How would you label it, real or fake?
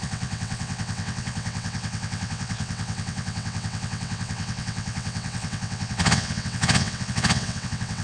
fake